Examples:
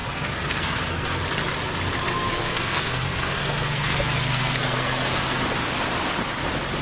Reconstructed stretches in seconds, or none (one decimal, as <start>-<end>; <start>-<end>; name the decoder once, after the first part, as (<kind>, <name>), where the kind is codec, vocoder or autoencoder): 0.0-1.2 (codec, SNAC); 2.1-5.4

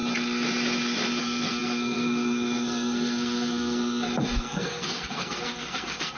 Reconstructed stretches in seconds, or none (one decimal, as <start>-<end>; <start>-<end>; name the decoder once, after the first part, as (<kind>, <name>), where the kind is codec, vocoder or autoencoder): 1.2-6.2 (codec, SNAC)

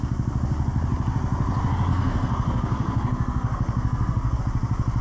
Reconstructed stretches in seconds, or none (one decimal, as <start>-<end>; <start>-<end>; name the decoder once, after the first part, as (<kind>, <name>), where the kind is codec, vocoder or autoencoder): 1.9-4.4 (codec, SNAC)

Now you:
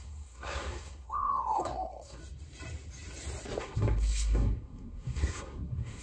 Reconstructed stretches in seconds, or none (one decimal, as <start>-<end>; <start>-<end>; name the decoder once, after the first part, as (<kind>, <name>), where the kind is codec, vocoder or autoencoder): 0.0-2.2 (codec, SNAC); 3.6-6.0

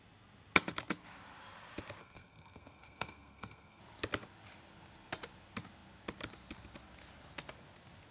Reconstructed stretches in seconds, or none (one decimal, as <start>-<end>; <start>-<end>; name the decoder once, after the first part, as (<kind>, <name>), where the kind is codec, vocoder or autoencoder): 2.0-3.8 (codec, SNAC)

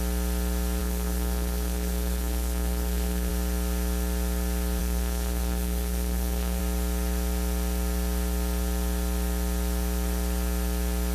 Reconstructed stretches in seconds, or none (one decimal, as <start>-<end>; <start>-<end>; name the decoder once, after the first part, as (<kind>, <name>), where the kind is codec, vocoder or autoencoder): 0.8-3.3 (codec, SNAC); 4.8-6.6

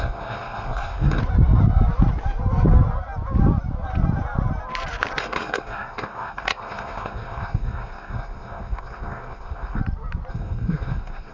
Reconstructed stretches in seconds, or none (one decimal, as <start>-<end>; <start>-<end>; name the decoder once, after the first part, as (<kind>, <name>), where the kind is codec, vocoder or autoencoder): 0.0-1.2 (codec, SNAC); 5.2-9.8; 10.3-11.3